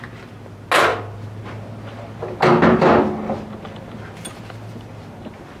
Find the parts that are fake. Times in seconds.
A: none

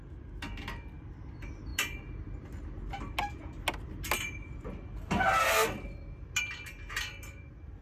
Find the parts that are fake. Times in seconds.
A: none

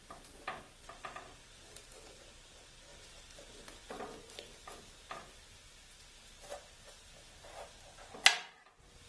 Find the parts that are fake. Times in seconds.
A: none